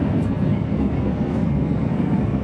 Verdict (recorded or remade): remade